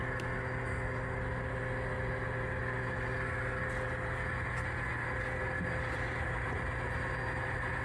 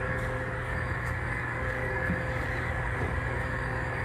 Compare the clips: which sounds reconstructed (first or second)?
second